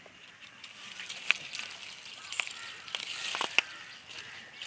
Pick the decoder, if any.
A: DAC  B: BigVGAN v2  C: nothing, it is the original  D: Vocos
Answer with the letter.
C